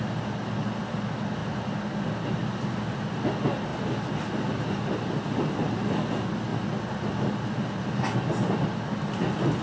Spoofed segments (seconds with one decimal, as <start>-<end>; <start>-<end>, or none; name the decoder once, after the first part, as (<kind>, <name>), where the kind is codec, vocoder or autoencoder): none